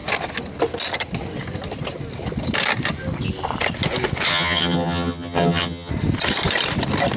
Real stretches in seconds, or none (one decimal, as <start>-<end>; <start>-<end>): 0.0-4.3; 5.9-7.2

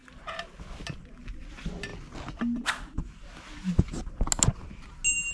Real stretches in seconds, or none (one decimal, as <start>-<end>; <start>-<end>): 0.0-5.3

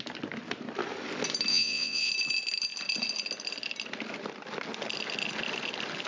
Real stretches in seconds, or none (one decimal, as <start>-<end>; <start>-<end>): 0.0-1.5; 2.1-6.1

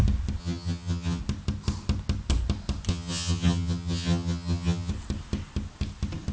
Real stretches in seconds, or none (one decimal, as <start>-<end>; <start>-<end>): 0.0-0.4; 1.2-2.9; 4.9-6.3

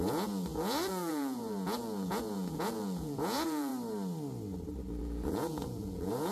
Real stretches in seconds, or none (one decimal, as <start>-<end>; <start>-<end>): 3.7-5.0

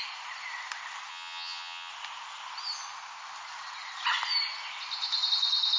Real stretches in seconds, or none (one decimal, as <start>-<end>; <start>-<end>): 0.0-1.1; 1.9-5.8